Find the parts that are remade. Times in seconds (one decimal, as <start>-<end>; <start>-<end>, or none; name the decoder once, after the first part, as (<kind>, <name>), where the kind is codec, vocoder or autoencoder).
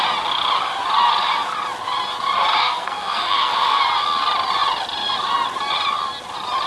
2.6-3.8 (codec, SNAC)